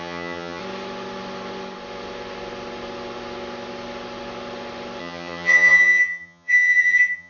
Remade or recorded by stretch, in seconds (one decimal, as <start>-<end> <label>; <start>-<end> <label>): 0.0-0.6 remade; 0.6-5.0 recorded; 5.0-7.3 remade